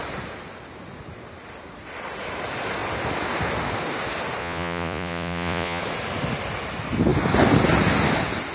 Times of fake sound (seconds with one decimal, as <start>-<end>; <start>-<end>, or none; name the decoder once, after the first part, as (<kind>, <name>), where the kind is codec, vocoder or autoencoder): 4.4-5.8 (vocoder, Vocos)